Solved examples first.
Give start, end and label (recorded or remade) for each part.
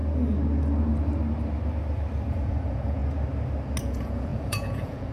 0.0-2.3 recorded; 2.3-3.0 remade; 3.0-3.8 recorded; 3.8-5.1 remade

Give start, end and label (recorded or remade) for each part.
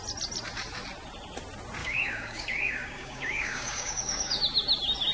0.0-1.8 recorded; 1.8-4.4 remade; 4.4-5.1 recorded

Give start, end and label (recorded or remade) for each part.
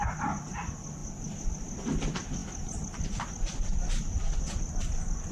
0.0-5.3 recorded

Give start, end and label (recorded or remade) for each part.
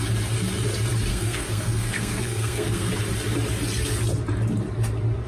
0.0-1.1 recorded; 1.1-2.9 remade; 2.9-5.3 recorded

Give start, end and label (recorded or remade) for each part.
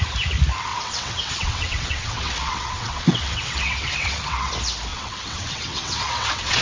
0.0-0.7 recorded; 0.7-4.5 remade; 4.5-4.9 recorded; 4.9-6.6 remade